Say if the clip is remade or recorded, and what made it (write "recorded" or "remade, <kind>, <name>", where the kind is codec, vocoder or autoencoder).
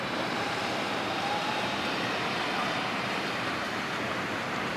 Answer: remade, vocoder, BigVGAN v2